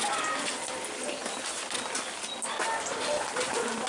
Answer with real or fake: real